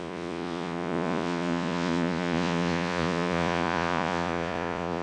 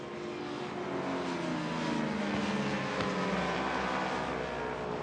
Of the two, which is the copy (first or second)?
first